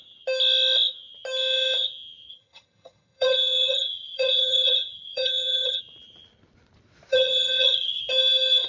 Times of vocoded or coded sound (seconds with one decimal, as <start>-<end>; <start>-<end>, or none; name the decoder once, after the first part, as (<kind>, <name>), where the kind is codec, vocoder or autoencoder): 2.3-5.8 (vocoder, HiFi-GAN); 7.1-8.0